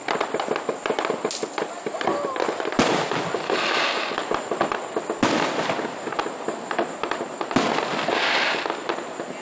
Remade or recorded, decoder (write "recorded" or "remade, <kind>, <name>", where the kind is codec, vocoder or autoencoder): recorded